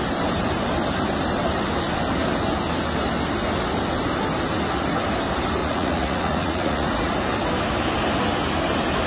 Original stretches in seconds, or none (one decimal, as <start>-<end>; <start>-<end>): 0.0-5.6; 7.1-9.1